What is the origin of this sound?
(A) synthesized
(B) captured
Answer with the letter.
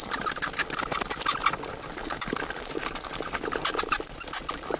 B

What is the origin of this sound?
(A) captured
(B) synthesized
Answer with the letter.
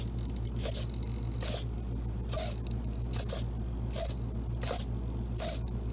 A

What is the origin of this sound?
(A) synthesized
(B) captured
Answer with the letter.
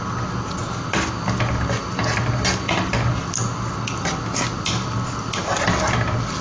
B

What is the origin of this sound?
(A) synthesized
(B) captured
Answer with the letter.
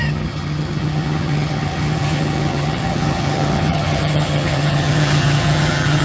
A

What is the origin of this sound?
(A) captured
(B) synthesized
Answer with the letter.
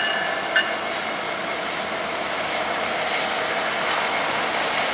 A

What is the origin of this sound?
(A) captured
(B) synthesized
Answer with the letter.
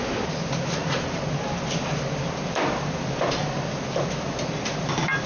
A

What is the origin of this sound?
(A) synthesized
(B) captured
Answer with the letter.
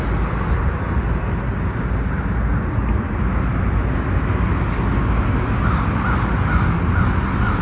B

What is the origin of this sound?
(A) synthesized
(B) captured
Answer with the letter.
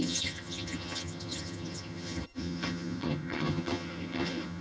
A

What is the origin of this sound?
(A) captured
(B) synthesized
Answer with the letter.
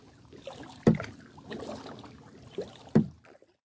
A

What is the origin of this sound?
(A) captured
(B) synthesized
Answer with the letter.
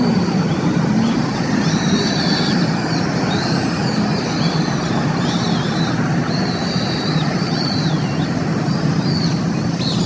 A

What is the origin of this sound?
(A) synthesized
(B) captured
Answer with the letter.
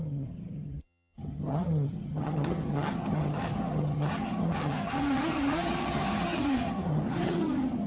A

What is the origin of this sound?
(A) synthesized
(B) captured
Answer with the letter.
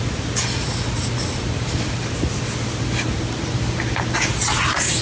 B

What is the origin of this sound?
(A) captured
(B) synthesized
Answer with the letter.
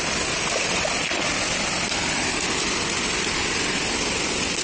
A